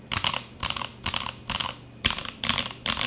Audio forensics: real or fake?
real